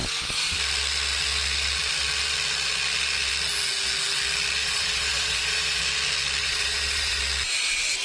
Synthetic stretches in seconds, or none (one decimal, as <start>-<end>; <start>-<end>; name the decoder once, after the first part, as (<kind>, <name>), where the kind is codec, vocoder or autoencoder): 4.6-5.8 (vocoder, Vocos); 6.4-7.2

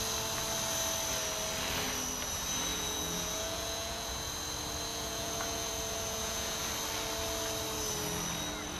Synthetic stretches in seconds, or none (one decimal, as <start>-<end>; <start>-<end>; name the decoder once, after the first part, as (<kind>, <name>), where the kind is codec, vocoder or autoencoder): 2.7-4.3 (vocoder, Vocos); 4.9-6.7

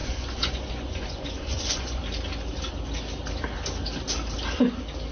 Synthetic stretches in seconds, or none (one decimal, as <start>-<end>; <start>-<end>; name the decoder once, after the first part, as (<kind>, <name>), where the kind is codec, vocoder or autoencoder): 0.0-2.0 (vocoder, Vocos)

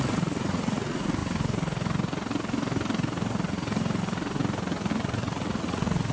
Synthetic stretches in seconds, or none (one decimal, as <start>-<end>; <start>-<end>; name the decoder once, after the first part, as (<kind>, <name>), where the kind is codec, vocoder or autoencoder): 0.0-1.2 (vocoder, Vocos); 4.9-6.1

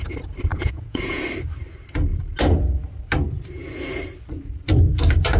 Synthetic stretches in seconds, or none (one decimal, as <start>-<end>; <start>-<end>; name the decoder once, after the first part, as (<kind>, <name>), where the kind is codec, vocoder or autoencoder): 0.5-1.2 (vocoder, Vocos)

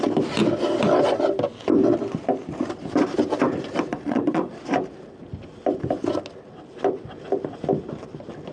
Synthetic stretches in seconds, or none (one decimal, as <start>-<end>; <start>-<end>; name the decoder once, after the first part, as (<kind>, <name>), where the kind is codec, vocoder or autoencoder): 3.9-4.5 (vocoder, Vocos)

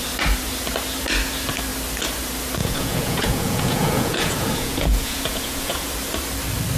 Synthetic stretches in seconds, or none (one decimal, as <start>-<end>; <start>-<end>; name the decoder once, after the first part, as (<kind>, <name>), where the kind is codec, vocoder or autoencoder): 2.6-5.9 (vocoder, Vocos)